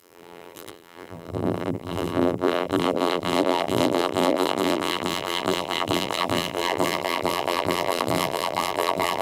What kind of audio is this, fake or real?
fake